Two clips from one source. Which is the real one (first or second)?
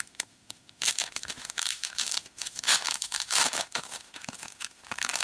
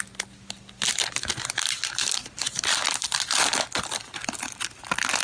second